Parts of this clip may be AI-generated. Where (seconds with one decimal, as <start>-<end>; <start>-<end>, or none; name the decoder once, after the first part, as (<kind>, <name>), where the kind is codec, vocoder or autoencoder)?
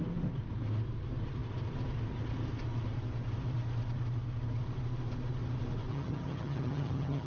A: 5.9-7.3 (vocoder, HiFi-GAN)